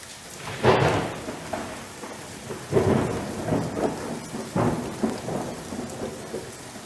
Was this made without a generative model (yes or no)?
yes